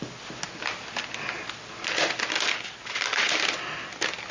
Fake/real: real